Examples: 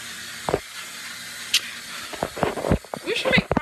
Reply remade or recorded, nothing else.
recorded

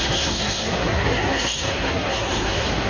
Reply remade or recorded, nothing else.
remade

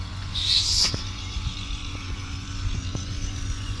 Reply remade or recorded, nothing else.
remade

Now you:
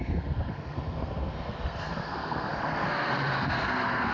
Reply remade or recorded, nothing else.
remade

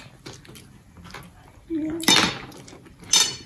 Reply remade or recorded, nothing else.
recorded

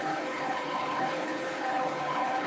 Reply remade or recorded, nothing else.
remade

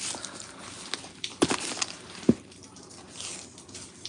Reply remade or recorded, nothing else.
recorded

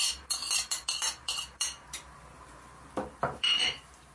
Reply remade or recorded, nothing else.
remade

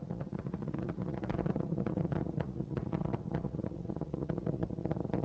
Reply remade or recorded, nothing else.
remade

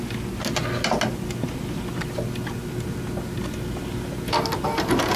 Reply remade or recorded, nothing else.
recorded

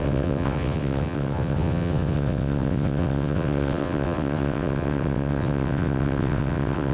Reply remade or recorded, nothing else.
remade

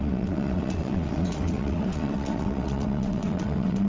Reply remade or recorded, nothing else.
remade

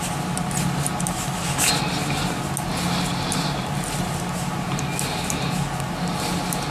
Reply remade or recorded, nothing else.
recorded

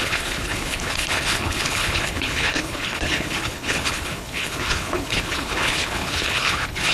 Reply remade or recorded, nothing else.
remade